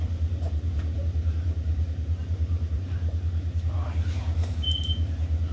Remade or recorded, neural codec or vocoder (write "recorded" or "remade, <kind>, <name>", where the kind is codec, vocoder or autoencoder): remade, vocoder, BigVGAN v2